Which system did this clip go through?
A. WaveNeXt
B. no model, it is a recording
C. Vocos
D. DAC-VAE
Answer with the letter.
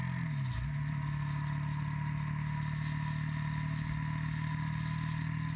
B